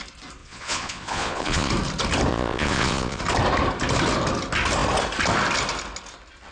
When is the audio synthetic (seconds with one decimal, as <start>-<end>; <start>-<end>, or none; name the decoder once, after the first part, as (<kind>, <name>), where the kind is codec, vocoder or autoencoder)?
0.4-1.7 (vocoder, Vocos); 2.3-3.2